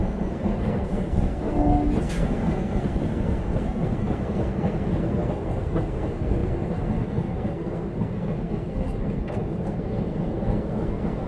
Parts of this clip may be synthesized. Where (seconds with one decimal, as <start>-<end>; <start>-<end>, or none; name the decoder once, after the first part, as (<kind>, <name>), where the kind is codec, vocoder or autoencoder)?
0.0-11.3 (codec, SNAC)